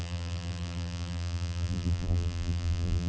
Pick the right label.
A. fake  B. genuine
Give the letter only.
A